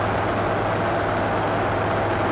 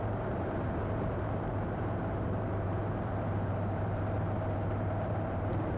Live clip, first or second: first